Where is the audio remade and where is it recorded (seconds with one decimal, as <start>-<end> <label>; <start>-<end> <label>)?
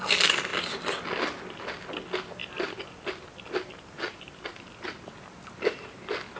0.0-2.4 recorded; 2.4-6.4 remade